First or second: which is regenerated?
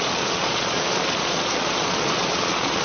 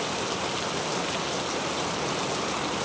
first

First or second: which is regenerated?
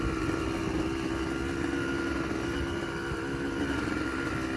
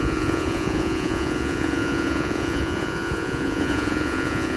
second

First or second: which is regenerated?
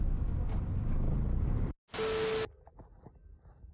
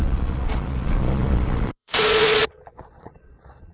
second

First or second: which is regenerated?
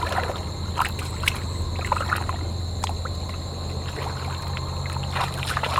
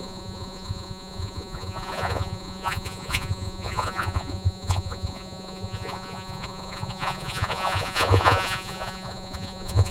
second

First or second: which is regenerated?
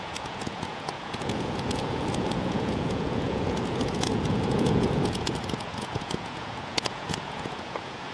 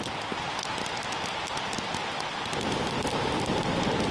first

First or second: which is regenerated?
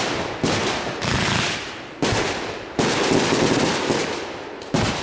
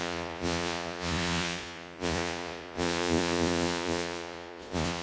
second